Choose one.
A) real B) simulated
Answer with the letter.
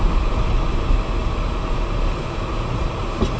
A